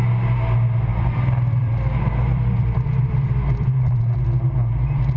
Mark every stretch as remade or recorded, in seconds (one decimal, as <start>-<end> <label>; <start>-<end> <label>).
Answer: 0.0-0.9 recorded; 0.9-4.0 remade; 4.0-5.2 recorded